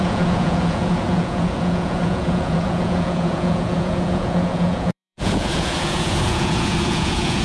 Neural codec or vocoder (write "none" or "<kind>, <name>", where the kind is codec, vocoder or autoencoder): vocoder, Vocos